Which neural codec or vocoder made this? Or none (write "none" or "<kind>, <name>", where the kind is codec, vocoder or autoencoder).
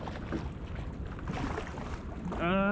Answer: none